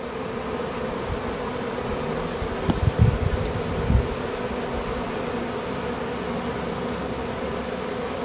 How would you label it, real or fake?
real